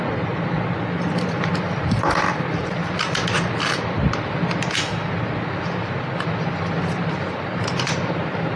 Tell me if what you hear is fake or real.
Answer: real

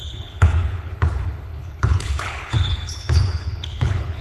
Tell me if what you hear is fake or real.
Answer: fake